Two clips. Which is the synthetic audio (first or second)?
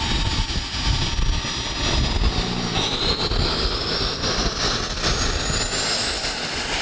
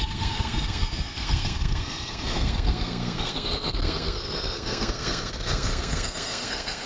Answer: second